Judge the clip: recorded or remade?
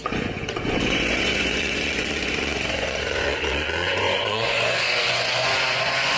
remade